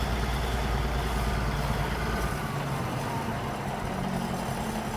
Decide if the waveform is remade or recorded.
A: recorded